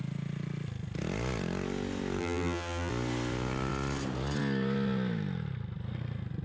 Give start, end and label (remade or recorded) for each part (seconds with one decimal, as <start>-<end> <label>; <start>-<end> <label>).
0.0-2.2 recorded; 2.2-2.9 remade; 2.9-6.4 recorded